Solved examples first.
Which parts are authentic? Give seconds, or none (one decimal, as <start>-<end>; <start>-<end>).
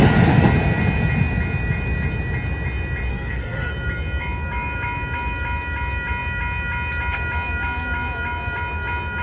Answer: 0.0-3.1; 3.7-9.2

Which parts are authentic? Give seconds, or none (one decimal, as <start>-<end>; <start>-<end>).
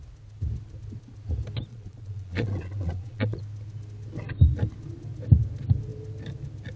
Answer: 0.0-1.7; 3.4-6.8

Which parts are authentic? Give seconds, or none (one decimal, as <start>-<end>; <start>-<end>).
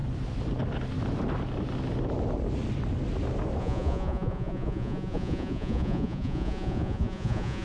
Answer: 0.0-3.6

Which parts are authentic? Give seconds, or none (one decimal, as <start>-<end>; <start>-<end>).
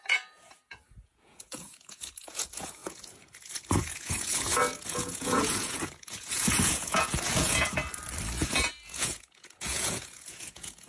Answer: 7.8-8.4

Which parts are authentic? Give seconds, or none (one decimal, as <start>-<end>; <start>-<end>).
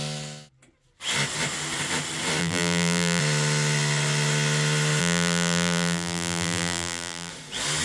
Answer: 0.0-2.4; 3.2-5.0; 7.3-7.8